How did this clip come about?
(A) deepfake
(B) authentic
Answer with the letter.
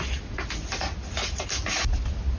B